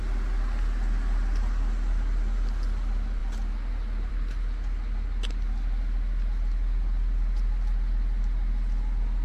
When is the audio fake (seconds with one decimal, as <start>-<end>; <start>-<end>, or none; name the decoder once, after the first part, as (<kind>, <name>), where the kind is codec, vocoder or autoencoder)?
none